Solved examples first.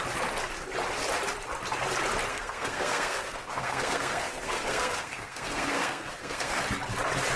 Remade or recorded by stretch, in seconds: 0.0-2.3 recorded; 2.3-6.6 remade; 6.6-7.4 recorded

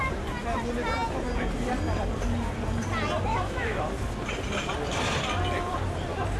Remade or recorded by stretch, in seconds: 0.0-3.3 recorded; 3.3-3.8 remade; 3.8-6.4 recorded

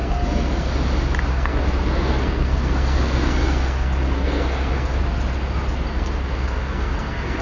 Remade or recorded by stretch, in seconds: 0.0-0.7 remade; 0.7-1.3 recorded; 1.3-5.0 remade; 5.0-5.9 recorded; 5.9-7.4 remade

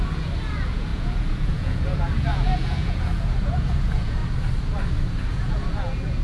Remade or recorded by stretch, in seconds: 0.0-4.2 remade; 4.2-5.3 recorded; 5.3-6.2 remade

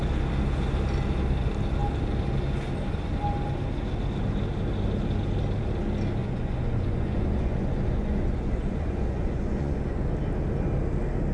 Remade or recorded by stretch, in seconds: 0.0-6.2 recorded; 6.2-10.0 remade; 10.0-11.3 recorded

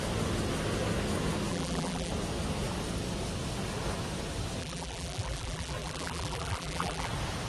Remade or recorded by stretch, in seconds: 0.0-1.5 recorded; 1.5-2.1 remade; 2.1-4.6 recorded; 4.6-7.1 remade; 7.1-7.5 recorded

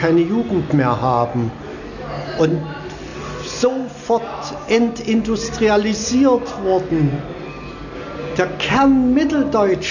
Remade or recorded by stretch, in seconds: 0.0-9.9 recorded